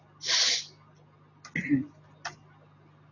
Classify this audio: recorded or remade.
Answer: recorded